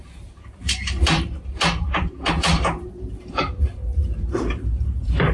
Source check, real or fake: fake